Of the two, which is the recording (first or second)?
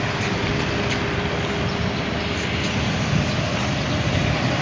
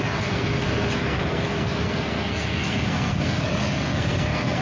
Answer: first